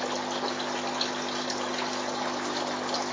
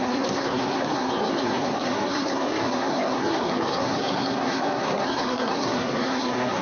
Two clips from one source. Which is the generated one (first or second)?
second